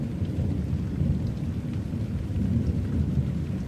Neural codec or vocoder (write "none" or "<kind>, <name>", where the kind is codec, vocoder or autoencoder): none